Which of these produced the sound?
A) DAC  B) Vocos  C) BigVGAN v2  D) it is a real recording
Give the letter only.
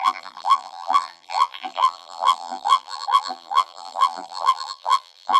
C